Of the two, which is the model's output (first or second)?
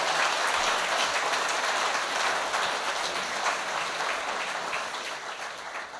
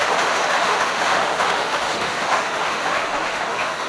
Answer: second